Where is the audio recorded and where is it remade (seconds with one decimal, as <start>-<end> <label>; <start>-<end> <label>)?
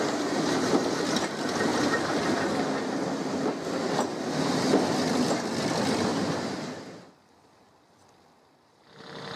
0.0-6.1 recorded; 6.1-9.0 remade; 9.0-9.4 recorded